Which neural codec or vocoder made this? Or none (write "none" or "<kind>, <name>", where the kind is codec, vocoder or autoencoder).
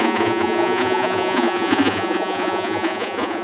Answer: vocoder, Vocos